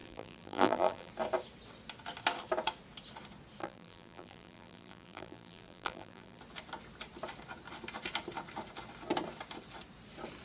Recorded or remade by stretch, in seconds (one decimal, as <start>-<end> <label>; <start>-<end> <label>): 0.0-1.1 remade; 1.1-3.6 recorded; 3.6-6.4 remade; 6.4-10.4 recorded